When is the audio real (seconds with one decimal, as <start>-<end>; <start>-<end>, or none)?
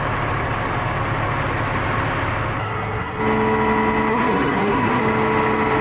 0.0-2.6; 3.2-4.1; 5.0-5.8